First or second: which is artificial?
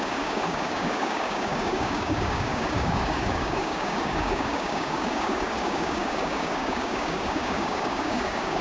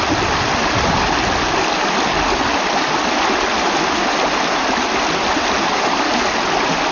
first